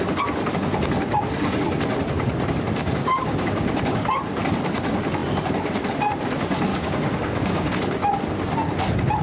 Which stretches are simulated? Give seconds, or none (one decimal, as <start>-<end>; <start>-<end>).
2.8-3.8; 6.7-7.7